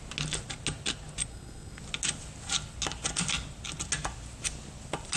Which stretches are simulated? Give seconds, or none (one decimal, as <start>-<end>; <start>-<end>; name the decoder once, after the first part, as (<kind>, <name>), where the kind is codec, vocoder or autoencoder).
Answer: 1.3-1.8 (codec, SNAC)